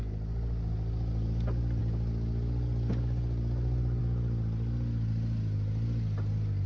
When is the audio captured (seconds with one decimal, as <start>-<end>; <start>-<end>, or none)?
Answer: 0.0-6.7